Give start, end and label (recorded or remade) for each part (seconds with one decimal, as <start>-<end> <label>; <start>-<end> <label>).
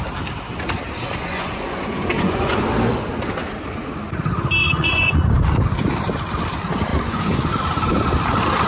0.0-1.3 recorded; 1.3-2.6 remade; 2.6-4.6 recorded; 4.6-5.2 remade; 5.2-6.9 recorded; 6.9-7.5 remade; 7.5-8.7 recorded